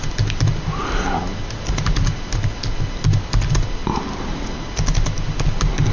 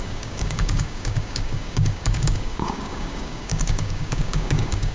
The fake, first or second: second